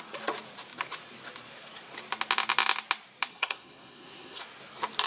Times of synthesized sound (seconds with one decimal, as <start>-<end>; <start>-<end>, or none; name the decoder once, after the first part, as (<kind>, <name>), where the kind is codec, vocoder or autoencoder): 3.3-4.4 (codec, SNAC)